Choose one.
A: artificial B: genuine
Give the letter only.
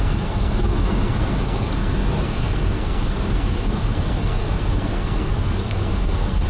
A